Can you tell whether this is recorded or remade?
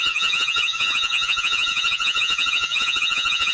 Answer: remade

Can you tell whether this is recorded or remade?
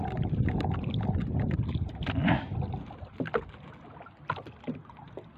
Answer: recorded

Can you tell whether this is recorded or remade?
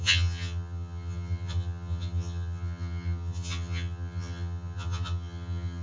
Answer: remade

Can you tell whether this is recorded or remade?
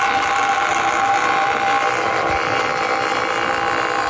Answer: recorded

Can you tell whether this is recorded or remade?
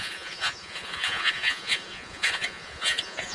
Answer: remade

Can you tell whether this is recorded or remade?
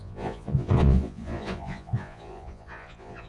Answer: remade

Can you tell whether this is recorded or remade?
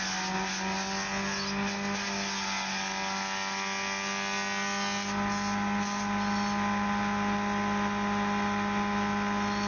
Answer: recorded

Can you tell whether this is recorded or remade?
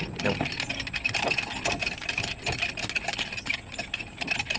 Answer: recorded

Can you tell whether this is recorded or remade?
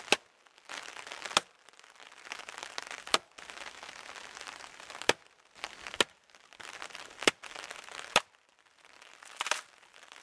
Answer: recorded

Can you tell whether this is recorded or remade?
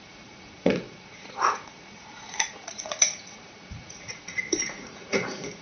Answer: remade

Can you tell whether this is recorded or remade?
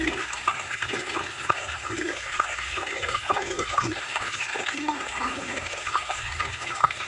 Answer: remade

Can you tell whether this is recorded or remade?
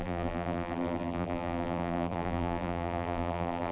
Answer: remade